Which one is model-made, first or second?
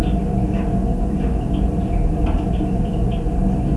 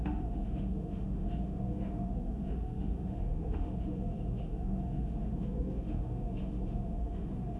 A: second